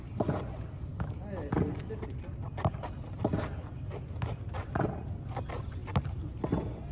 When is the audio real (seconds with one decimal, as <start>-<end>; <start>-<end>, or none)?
0.0-5.8